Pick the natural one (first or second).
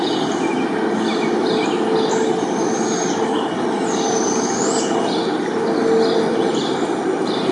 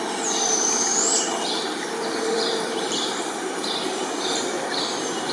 first